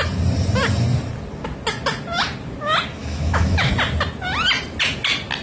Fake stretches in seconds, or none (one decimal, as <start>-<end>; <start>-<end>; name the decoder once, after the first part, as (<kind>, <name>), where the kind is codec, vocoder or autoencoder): 3.0-3.7 (autoencoder, DAC-VAE)